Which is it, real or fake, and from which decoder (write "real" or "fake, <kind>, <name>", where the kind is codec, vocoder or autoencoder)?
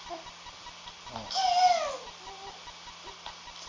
real